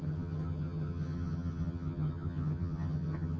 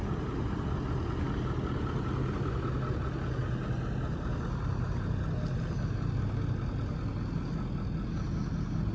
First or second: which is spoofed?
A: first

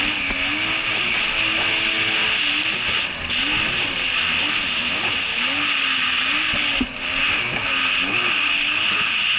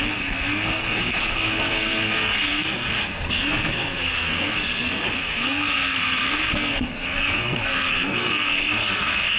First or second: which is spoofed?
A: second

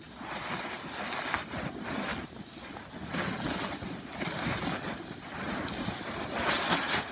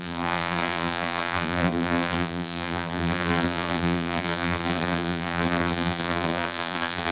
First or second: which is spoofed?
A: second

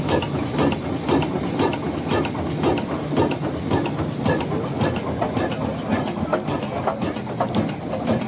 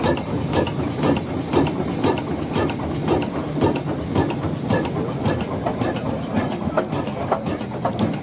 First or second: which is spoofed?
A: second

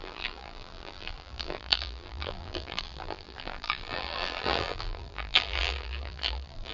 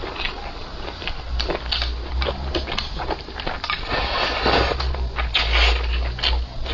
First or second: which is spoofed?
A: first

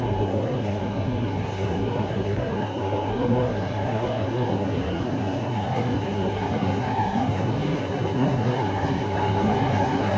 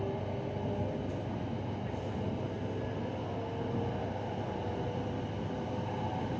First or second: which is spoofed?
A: first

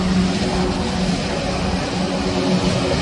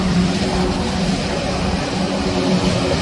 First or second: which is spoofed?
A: second